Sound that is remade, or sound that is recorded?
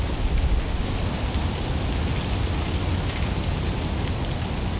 recorded